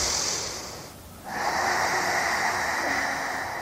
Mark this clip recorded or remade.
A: recorded